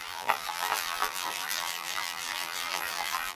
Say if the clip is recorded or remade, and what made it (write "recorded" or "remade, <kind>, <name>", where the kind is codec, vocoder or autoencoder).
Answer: remade, vocoder, BigVGAN v2